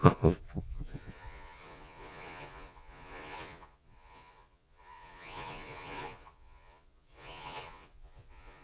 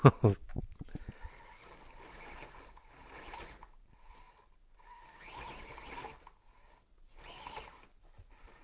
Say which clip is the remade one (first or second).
first